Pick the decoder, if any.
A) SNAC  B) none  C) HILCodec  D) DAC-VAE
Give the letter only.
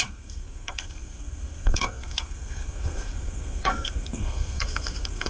A